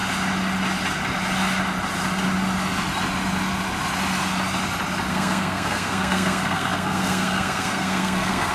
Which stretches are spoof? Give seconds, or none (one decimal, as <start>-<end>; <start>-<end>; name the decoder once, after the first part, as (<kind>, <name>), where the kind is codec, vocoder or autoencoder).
5.1-8.5 (codec, SNAC)